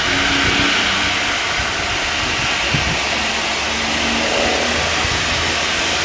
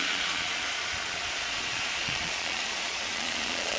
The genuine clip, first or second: first